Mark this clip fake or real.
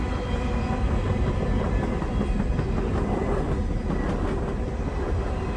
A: real